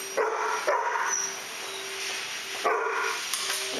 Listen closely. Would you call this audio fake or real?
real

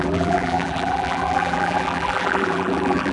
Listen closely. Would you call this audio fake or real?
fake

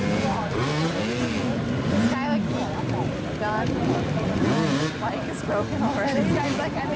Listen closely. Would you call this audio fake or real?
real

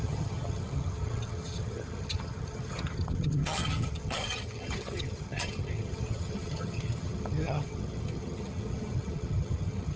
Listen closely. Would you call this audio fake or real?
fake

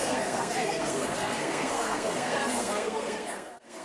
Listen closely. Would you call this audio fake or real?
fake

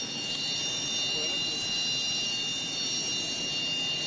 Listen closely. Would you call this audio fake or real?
real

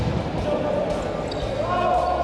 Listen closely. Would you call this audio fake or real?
real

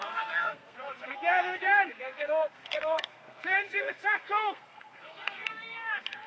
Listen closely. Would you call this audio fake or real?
fake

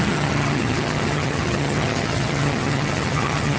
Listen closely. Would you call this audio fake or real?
fake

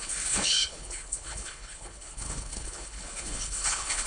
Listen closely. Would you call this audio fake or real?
fake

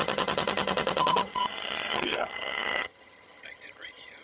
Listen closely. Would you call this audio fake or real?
fake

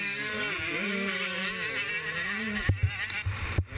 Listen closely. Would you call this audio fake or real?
fake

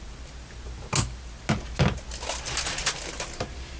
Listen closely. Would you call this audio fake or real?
real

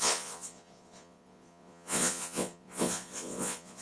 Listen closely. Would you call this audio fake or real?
fake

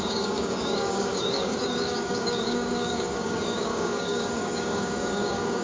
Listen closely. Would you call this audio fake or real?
fake